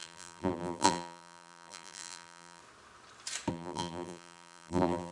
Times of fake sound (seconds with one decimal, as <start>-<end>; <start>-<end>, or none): 0.0-2.6; 3.5-5.1